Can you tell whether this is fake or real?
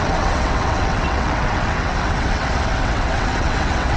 fake